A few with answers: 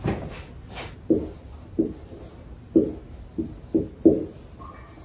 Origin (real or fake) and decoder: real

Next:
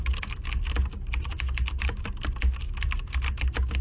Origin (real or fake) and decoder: real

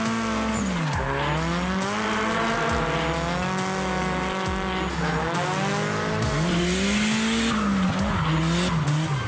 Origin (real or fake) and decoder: real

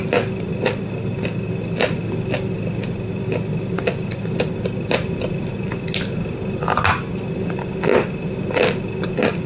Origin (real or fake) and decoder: real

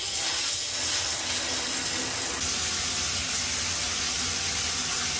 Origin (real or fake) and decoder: real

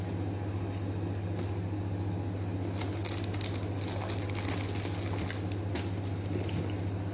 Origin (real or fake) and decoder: real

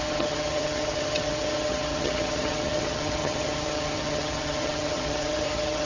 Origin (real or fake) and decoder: fake, vocoder, HiFi-GAN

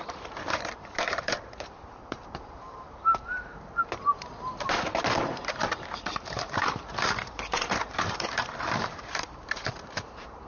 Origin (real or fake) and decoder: fake, vocoder, BigVGAN v2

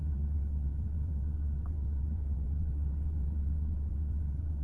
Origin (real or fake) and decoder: fake, vocoder, WaveNeXt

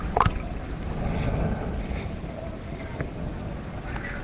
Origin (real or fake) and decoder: real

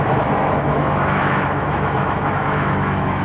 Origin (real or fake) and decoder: fake, autoencoder, DAC-VAE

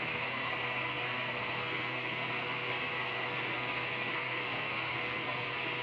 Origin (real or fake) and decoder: fake, codec, SNAC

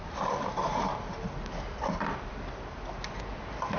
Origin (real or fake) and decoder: real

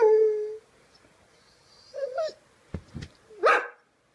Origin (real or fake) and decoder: real